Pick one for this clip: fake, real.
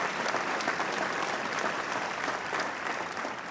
fake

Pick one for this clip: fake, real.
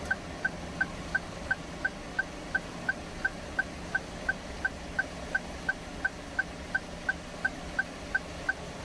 real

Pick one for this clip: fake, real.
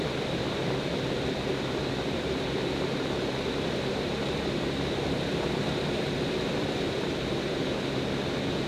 fake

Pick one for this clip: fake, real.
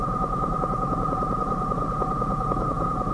real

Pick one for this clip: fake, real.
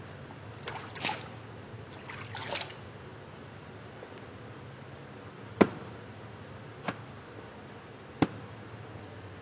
real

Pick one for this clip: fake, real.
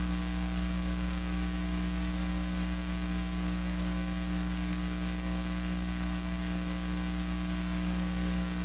fake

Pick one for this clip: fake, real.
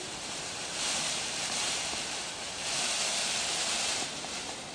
fake